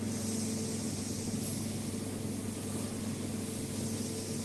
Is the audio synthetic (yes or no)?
no